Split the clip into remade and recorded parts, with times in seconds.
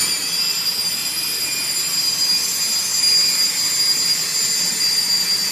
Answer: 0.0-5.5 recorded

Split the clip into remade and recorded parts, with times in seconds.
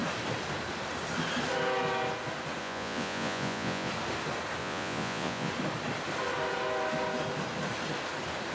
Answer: 0.0-2.6 recorded; 2.6-3.9 remade; 3.9-4.6 recorded; 4.6-5.5 remade; 5.5-8.5 recorded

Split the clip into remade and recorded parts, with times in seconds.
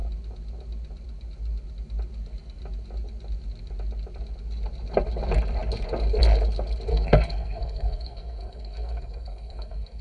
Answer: 0.0-6.9 recorded; 6.9-10.0 remade